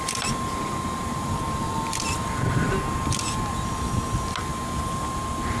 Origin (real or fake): real